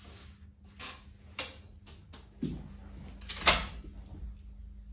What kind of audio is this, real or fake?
real